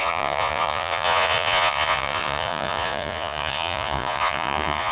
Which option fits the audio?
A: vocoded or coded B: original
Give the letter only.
A